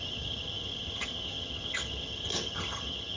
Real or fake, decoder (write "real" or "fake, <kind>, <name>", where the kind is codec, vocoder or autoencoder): fake, vocoder, HiFi-GAN